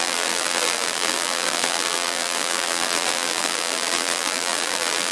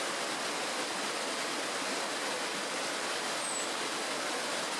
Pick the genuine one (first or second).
second